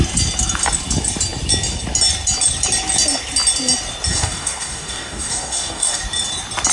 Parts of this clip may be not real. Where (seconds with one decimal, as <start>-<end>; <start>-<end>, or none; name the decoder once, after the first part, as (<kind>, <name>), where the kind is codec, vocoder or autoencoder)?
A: 4.1-6.0 (codec, DAC)